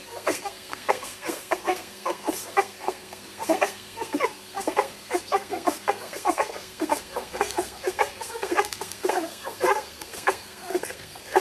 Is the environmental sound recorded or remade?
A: remade